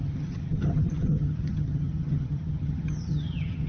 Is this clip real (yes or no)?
no